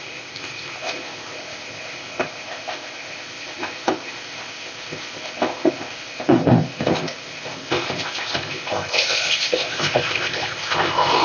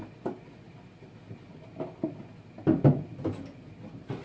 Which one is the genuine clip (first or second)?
second